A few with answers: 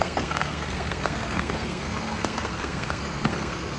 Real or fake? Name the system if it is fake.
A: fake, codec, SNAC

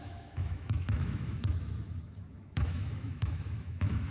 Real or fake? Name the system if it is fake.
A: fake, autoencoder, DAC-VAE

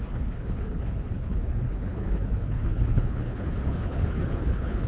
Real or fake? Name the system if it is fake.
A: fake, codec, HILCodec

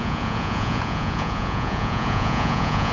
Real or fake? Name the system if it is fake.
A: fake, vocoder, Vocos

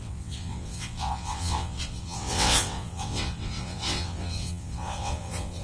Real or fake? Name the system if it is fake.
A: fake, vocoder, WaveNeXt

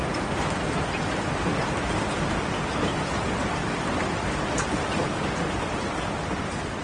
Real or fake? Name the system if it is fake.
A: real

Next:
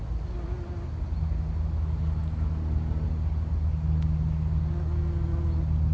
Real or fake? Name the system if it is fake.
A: real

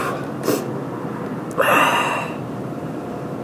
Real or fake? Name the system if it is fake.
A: real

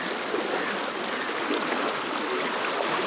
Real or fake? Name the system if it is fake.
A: real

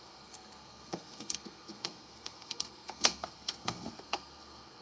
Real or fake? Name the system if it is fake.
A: fake, codec, SNAC